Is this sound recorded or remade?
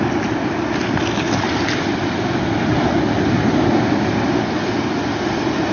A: recorded